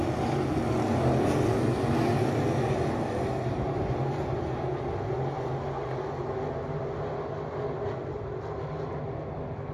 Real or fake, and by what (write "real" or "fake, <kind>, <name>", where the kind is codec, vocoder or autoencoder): real